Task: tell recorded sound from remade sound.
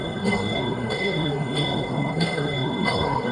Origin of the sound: remade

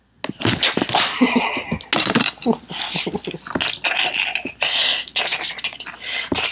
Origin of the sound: recorded